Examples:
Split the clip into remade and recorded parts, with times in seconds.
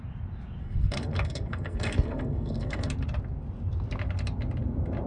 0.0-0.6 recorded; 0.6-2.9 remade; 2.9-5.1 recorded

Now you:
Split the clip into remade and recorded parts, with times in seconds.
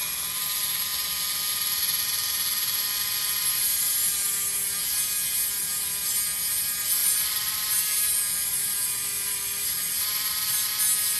0.0-7.0 recorded; 7.0-10.7 remade; 10.7-11.2 recorded